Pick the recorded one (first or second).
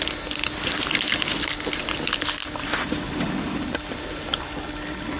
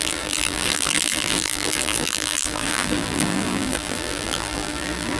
first